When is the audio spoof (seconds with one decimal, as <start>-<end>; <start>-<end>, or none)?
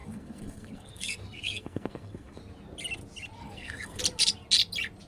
0.0-2.4; 3.4-4.0